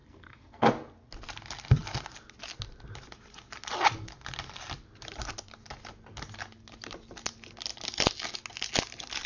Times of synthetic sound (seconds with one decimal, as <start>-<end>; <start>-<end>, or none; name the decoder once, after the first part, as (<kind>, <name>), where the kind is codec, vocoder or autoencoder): 0.0-0.7 (codec, SNAC)